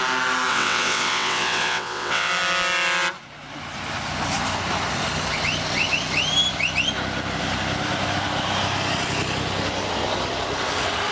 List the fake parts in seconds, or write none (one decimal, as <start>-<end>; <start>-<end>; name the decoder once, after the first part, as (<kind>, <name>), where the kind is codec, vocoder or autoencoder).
0.5-2.3 (vocoder, WaveNeXt)